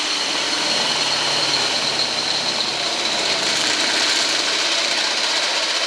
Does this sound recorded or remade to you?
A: remade